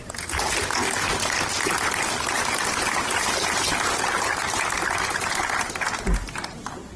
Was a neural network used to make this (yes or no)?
no